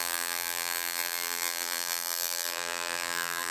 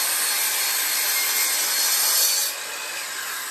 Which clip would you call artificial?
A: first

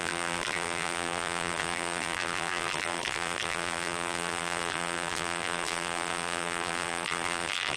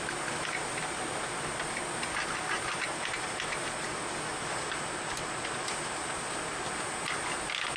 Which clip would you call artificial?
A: first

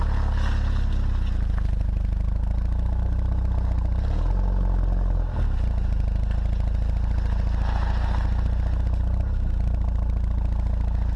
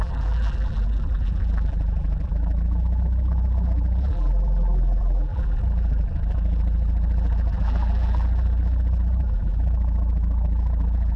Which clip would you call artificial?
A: second